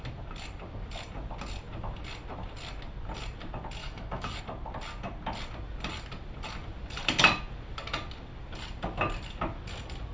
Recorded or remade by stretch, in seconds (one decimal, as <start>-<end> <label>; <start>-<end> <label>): 0.0-3.8 recorded; 3.8-4.4 remade; 4.4-10.1 recorded